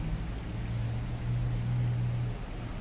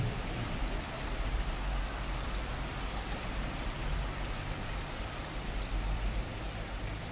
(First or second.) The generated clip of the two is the second